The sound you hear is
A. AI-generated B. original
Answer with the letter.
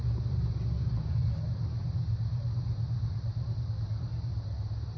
A